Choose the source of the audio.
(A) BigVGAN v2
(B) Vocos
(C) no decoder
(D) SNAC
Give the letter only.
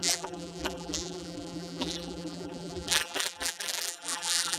A